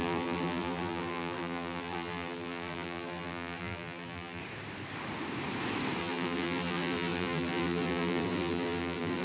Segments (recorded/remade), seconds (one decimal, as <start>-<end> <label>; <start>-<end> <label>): 0.0-4.4 remade; 4.4-6.0 recorded; 6.0-9.2 remade